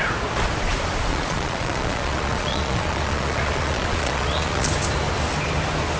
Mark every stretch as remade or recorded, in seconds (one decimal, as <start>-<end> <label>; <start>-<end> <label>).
0.0-1.1 recorded; 1.1-4.7 remade; 4.7-6.0 recorded